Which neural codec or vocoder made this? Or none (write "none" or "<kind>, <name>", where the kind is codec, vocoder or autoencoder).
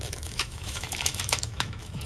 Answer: autoencoder, DAC-VAE